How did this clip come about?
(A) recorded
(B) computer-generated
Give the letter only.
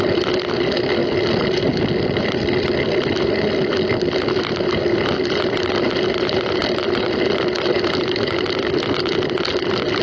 A